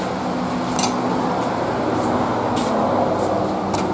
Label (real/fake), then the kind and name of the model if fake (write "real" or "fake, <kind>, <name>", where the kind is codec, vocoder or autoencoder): real